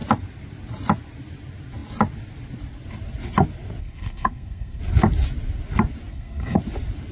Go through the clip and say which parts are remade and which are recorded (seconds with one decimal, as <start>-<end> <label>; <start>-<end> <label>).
0.0-3.8 recorded; 3.8-4.8 remade; 4.8-6.1 recorded; 6.1-6.6 remade; 6.6-7.1 recorded